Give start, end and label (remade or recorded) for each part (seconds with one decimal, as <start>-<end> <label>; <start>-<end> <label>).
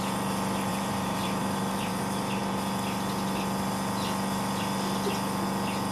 0.0-0.7 recorded; 0.7-2.0 remade; 2.0-5.9 recorded